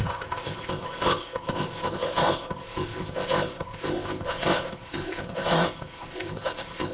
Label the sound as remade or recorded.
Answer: remade